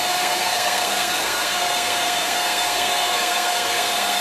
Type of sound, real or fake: fake